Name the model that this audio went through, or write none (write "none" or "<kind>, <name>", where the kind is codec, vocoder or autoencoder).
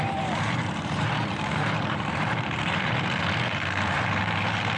vocoder, BigVGAN v2